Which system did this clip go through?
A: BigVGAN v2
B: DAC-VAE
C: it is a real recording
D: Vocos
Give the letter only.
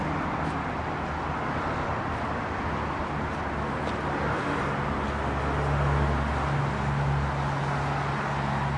C